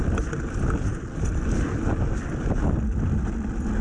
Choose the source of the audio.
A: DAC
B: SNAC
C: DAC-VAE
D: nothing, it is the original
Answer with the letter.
D